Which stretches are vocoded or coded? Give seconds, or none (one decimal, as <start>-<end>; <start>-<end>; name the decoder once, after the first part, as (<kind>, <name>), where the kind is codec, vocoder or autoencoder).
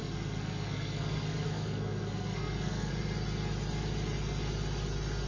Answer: 0.0-2.9 (codec, SNAC)